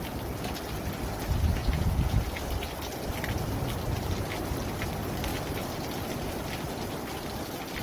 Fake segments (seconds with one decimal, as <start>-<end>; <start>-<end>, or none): 1.6-2.2